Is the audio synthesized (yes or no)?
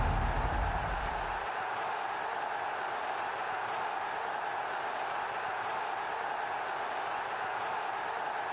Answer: no